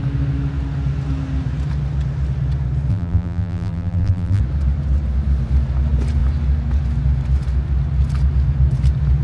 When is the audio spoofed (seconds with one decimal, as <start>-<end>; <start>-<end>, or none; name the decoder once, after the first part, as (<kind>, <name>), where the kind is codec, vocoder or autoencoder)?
2.9-4.4 (vocoder, BigVGAN v2)